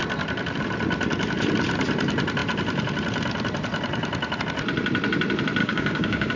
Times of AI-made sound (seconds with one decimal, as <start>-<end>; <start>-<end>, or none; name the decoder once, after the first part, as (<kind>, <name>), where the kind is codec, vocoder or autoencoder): 5.6-6.4 (codec, DAC)